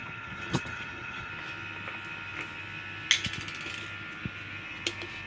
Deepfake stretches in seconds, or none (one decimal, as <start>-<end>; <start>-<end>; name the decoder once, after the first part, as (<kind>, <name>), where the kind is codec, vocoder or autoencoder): 0.0-1.3 (vocoder, HiFi-GAN)